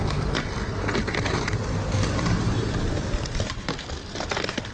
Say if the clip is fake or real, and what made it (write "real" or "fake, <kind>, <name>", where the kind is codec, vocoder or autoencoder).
real